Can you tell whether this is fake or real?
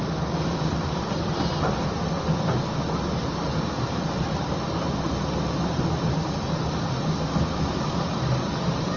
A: real